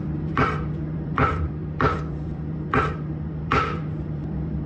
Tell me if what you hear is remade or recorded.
remade